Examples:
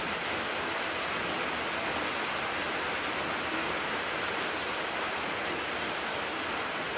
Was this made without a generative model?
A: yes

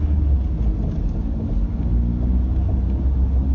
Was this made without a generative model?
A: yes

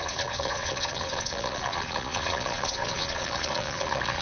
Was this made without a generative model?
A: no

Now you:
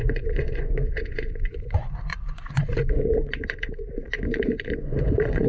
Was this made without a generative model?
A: no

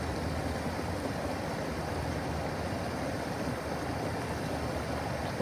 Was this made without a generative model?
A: yes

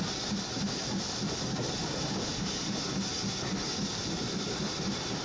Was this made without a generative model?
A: yes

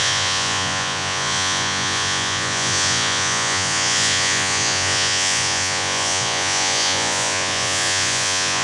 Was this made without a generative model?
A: no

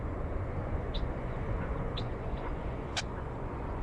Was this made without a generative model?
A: no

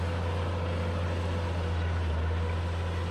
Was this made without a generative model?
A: yes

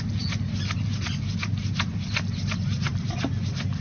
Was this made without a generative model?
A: yes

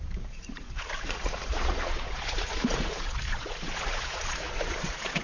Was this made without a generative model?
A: no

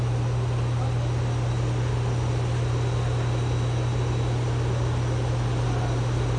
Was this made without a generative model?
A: yes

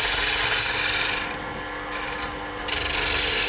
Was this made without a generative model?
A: yes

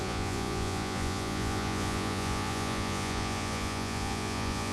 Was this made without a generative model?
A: no